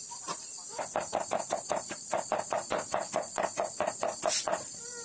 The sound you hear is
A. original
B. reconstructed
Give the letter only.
A